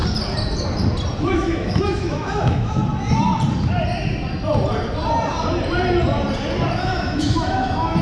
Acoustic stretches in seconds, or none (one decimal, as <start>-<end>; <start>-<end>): 0.0-1.2; 2.8-6.8